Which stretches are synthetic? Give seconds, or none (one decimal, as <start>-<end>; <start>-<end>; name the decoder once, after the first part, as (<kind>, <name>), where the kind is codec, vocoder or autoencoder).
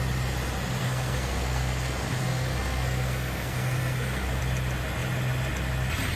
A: 0.8-4.4 (codec, SNAC)